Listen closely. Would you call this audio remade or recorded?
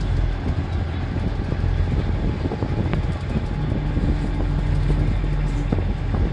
recorded